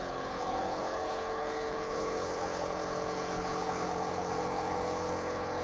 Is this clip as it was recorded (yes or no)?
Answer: no